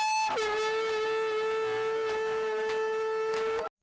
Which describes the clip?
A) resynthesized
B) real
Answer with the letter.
B